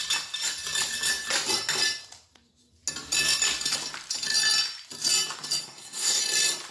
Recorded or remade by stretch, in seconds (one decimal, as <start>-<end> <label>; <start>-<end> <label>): 0.0-5.6 recorded; 5.6-6.2 remade; 6.2-6.7 recorded